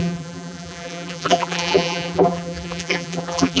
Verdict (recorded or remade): remade